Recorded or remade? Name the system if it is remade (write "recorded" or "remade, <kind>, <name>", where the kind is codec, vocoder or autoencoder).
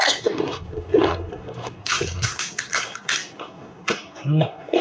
remade, codec, SNAC